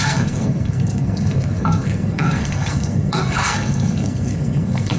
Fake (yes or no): yes